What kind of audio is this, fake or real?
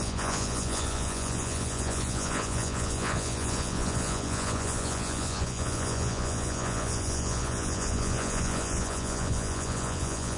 fake